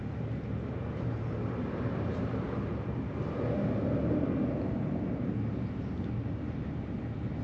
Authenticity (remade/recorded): recorded